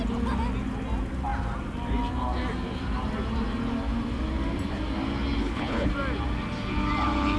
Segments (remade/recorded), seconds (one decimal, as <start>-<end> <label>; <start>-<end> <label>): 0.0-5.4 recorded; 5.4-5.9 remade; 5.9-7.4 recorded